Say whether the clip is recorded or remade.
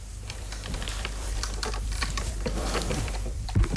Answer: remade